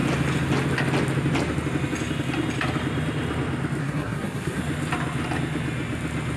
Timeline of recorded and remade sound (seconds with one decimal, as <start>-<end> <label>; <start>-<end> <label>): 0.0-3.8 recorded; 3.8-4.6 remade; 4.6-6.4 recorded